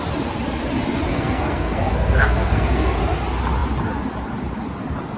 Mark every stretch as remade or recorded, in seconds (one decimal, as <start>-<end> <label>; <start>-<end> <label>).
0.0-1.1 recorded; 1.1-3.0 remade; 3.0-5.2 recorded